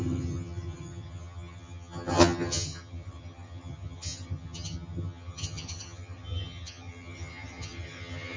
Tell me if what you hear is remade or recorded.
remade